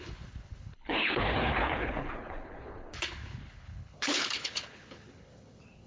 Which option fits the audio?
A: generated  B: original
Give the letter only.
A